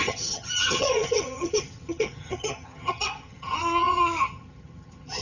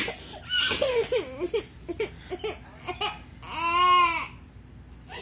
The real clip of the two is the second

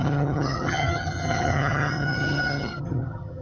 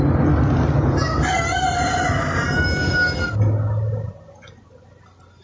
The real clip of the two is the second